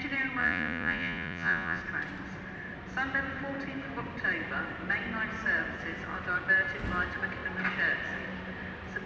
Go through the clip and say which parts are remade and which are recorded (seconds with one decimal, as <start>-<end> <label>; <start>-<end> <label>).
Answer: 0.0-0.4 recorded; 0.4-1.8 remade; 1.8-9.1 recorded